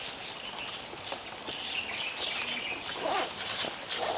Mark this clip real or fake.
real